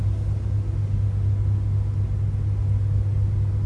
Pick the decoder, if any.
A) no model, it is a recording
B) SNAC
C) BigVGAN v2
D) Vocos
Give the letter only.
A